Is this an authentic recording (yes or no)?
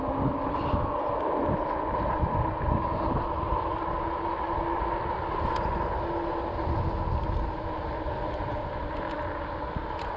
yes